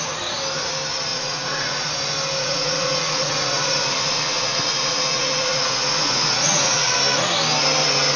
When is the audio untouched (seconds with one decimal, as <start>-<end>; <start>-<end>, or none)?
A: 0.0-1.1; 1.9-2.4; 6.9-8.2